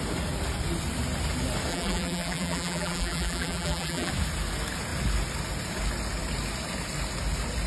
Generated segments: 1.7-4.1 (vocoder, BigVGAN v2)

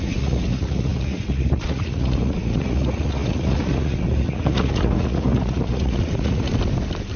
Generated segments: 0.0-6.5 (vocoder, Vocos)

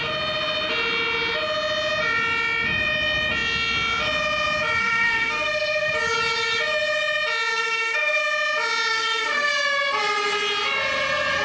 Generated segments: 4.8-5.9 (codec, SNAC); 7.5-8.2; 8.9-9.5

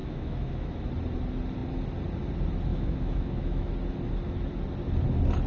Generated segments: 0.0-0.9 (autoencoder, DAC-VAE); 2.7-3.7

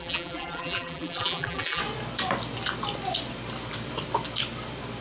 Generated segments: 0.0-1.8 (vocoder, BigVGAN v2)